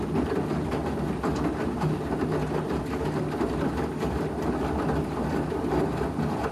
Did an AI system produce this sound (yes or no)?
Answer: no